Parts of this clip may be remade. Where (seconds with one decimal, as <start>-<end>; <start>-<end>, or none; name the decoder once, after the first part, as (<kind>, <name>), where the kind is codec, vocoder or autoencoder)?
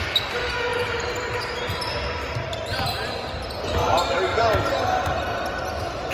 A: 4.3-4.8 (vocoder, BigVGAN v2)